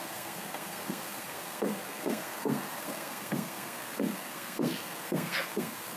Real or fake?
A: fake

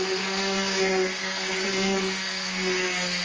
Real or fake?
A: fake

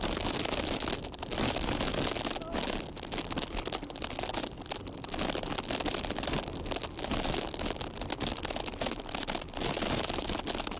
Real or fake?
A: real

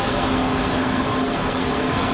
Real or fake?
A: fake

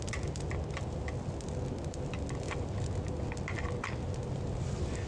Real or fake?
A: real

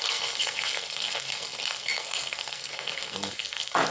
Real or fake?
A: fake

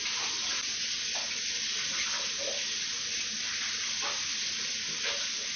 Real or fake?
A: real